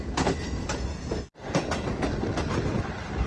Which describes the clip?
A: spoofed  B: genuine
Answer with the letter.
B